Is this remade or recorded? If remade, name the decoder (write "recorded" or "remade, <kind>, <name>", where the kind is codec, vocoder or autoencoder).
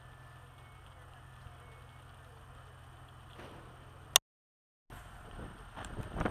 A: recorded